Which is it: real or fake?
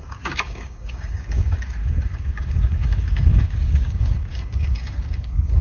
fake